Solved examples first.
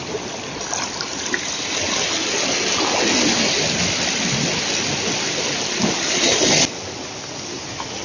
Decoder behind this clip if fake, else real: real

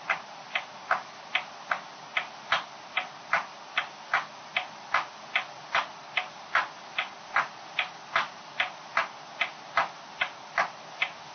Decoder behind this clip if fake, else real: real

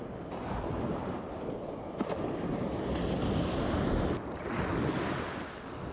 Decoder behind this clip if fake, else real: real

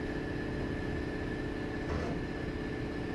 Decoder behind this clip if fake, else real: real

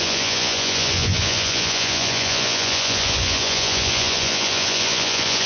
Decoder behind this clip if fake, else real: fake, vocoder, Vocos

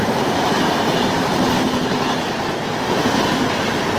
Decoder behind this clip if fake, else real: real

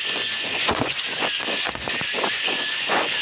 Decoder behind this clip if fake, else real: fake, vocoder, Vocos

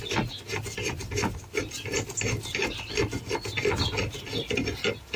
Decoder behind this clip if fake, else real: real